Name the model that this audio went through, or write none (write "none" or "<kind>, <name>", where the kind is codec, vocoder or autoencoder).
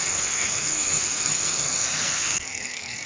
codec, SNAC